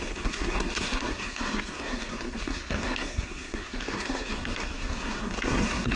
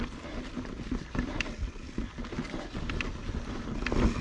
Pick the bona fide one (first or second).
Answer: second